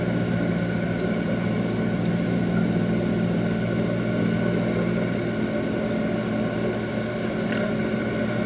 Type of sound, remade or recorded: recorded